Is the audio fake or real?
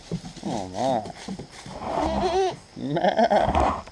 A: real